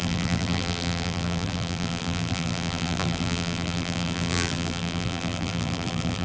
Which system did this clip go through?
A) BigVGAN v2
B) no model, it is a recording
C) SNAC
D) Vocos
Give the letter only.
A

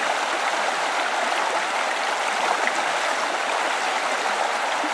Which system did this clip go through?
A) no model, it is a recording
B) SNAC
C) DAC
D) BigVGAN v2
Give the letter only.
A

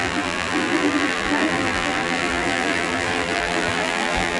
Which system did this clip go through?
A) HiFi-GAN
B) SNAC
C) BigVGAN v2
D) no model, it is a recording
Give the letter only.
C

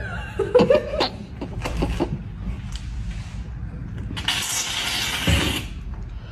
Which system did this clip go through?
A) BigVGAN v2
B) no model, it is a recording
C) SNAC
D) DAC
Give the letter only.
B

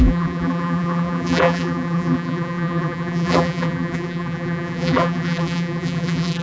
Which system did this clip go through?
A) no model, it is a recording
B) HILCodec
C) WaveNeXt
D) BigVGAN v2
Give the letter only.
D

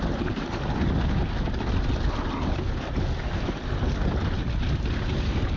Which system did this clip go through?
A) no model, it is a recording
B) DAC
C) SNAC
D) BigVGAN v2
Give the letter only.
A